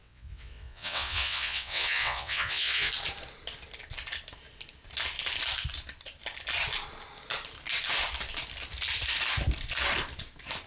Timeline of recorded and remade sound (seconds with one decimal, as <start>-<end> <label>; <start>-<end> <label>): 0.0-2.9 remade; 2.9-10.7 recorded